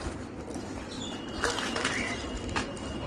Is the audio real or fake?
real